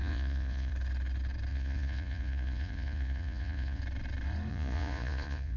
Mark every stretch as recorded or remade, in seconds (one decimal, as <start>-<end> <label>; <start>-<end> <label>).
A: 0.0-0.7 remade; 0.7-1.5 recorded; 1.5-3.8 remade; 3.8-4.5 recorded; 4.5-5.6 remade